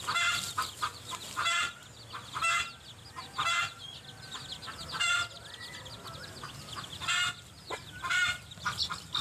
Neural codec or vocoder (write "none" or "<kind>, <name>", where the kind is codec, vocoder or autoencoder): none